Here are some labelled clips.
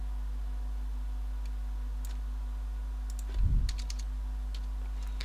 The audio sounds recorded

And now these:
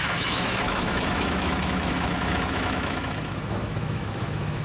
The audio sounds remade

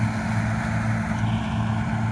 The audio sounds recorded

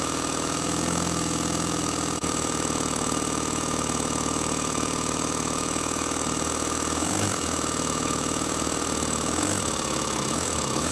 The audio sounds remade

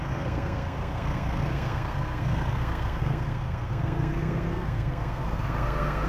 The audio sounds remade